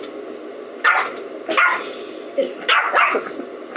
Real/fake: real